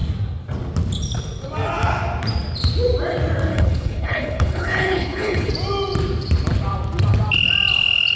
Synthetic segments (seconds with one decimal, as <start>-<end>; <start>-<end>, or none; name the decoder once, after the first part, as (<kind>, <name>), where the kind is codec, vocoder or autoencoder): 3.5-5.5 (codec, HILCodec)